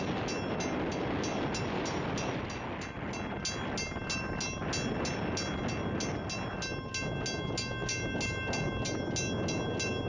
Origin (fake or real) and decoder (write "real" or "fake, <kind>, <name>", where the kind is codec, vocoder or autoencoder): real